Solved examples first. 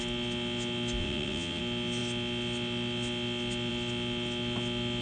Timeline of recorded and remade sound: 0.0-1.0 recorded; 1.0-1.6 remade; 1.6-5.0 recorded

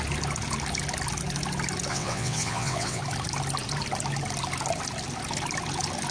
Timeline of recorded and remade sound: 0.0-1.9 recorded; 1.9-3.0 remade; 3.0-6.1 recorded

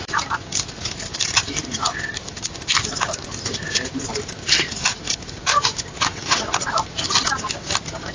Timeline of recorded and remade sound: 0.0-6.1 recorded; 6.1-6.7 remade; 6.7-8.1 recorded

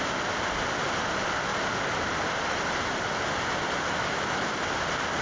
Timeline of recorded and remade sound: 0.0-5.2 recorded

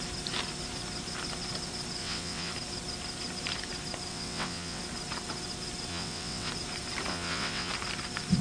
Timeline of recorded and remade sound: 0.0-2.0 recorded; 2.0-2.5 remade; 2.5-4.1 recorded; 4.1-4.8 remade; 4.8-5.9 recorded; 5.9-6.5 remade; 6.5-7.1 recorded; 7.1-7.7 remade; 7.7-8.4 recorded

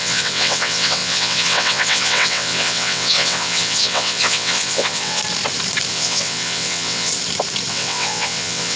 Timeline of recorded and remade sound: 0.0-5.2 remade; 5.2-5.9 recorded; 5.9-7.1 remade; 7.1-7.7 recorded; 7.7-8.8 remade

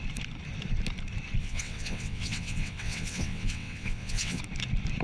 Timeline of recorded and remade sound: 0.0-1.4 recorded; 1.4-4.4 remade; 4.4-5.0 recorded

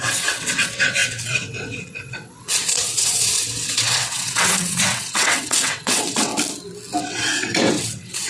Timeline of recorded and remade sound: 0.0-6.3 remade; 6.3-7.0 recorded; 7.0-8.3 remade